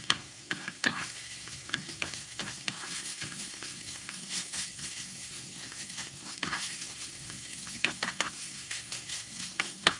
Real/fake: fake